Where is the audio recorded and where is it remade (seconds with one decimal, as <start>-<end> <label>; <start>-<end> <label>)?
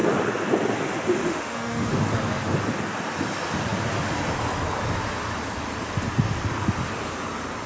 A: 0.0-1.2 recorded; 1.2-1.9 remade; 1.9-7.7 recorded